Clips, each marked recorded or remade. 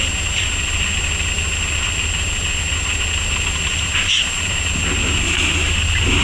recorded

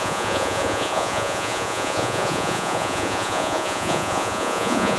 remade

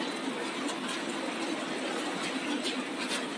recorded